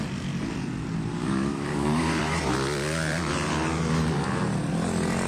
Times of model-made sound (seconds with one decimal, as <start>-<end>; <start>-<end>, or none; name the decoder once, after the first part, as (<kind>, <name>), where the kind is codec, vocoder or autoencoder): 1.1-2.2 (codec, DAC)